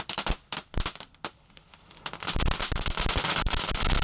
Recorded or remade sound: recorded